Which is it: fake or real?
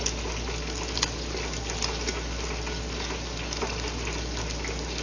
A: real